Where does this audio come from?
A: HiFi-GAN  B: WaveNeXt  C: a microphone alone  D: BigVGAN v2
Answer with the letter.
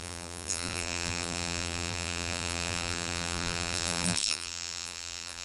D